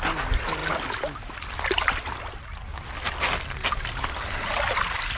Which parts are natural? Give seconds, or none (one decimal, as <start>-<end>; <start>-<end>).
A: 0.0-5.2